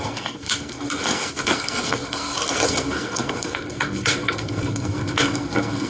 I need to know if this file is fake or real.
fake